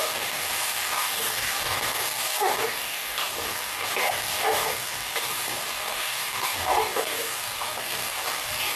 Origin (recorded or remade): remade